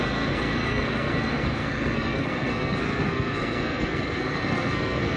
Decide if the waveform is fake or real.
fake